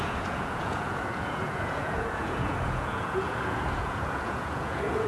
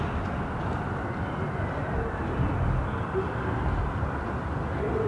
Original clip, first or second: second